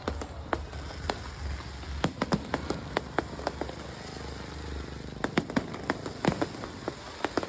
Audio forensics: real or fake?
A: real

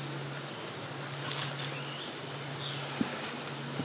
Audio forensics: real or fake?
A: real